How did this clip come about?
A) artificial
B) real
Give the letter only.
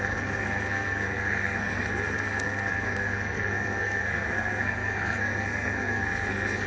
A